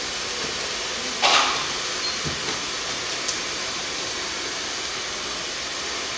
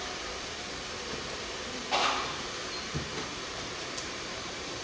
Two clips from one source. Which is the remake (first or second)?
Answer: second